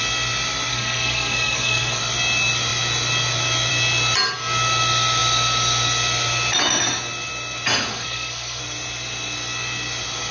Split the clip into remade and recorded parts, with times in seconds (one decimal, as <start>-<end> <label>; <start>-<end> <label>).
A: 0.0-0.7 recorded; 0.7-2.0 remade; 2.0-7.9 recorded; 7.9-8.6 remade; 8.6-10.3 recorded